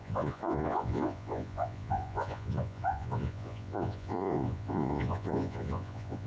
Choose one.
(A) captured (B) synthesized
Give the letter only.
B